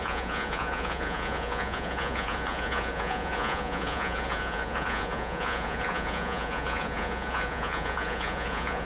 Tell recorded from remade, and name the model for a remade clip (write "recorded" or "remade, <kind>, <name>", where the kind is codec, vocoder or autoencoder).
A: remade, vocoder, Vocos